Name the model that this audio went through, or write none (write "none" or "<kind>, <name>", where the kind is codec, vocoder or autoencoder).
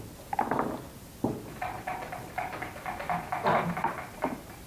none